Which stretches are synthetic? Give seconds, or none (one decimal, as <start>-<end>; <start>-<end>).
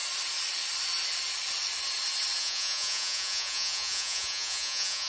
2.4-5.1